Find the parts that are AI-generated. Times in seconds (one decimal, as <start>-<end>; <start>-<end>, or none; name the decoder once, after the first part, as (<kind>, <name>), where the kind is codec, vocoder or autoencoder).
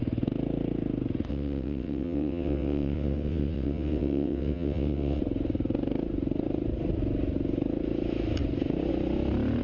1.3-5.2 (vocoder, WaveNeXt)